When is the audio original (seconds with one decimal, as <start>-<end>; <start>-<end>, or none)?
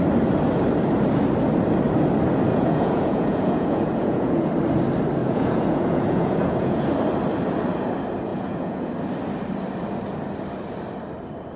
0.0-2.5; 4.5-5.2; 6.8-8.3; 8.9-11.6